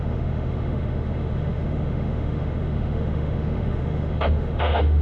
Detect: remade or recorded remade